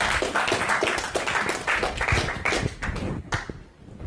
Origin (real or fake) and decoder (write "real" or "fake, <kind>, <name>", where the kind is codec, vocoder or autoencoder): real